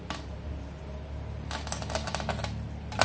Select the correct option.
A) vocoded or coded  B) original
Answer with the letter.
B